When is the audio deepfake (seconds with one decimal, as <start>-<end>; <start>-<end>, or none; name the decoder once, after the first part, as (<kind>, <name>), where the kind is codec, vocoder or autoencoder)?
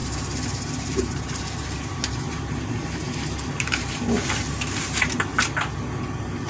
0.0-5.3 (vocoder, BigVGAN v2)